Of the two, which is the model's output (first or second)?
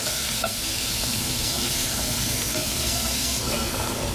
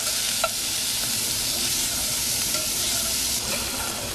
first